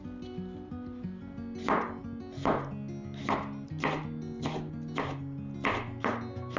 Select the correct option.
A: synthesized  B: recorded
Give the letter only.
B